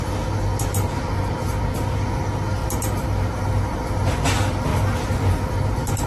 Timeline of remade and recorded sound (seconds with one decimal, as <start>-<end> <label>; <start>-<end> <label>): 0.0-0.7 recorded; 0.7-1.3 remade; 1.3-2.6 recorded; 2.6-3.9 remade; 3.9-4.7 recorded; 4.7-6.1 remade